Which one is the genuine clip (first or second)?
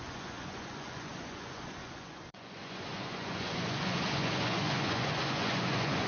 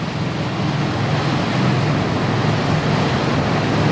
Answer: second